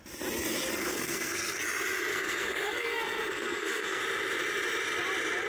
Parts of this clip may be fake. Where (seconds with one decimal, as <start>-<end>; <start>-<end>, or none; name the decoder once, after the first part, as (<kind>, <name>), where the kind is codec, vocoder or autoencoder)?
0.8-1.6 (codec, SNAC); 2.1-4.0